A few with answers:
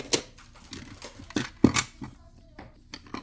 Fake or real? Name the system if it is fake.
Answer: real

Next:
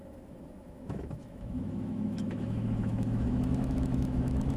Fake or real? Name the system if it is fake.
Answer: fake, autoencoder, DAC-VAE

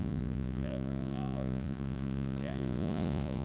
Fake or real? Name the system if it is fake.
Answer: fake, vocoder, Vocos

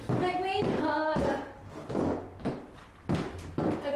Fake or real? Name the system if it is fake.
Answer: real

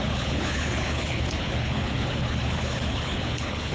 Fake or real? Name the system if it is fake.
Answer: fake, codec, HILCodec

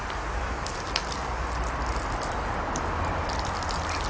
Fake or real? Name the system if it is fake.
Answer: real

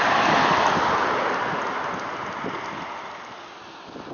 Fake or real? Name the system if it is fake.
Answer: real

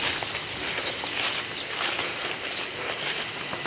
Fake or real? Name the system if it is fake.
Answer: real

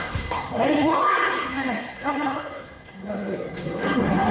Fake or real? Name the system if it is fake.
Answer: fake, codec, SNAC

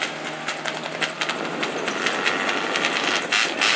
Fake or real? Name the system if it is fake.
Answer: real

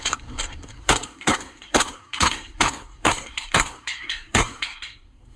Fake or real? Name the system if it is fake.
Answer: fake, codec, SNAC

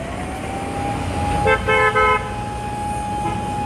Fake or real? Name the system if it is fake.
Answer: real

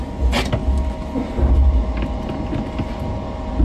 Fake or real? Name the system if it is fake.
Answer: real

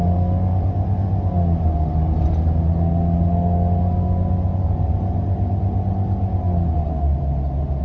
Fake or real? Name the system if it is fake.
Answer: real